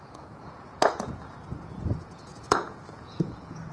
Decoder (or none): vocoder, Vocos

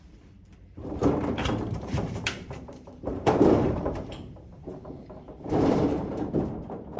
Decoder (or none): vocoder, BigVGAN v2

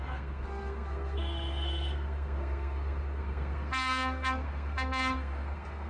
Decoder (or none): codec, SNAC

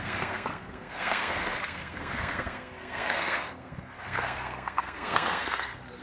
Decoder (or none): codec, SNAC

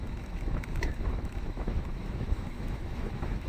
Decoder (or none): autoencoder, DAC-VAE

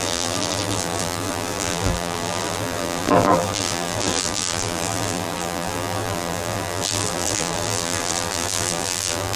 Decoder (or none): vocoder, BigVGAN v2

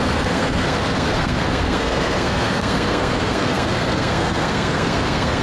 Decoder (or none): codec, SNAC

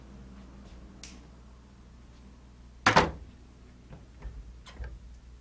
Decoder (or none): none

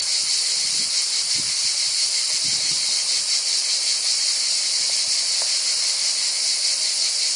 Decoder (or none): vocoder, BigVGAN v2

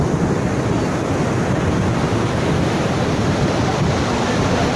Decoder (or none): none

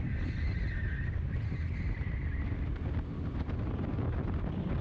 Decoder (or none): none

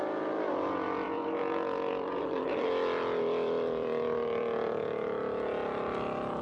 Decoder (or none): vocoder, BigVGAN v2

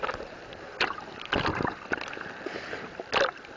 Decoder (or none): none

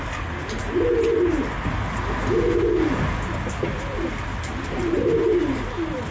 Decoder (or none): none